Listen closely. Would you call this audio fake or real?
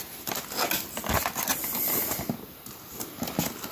real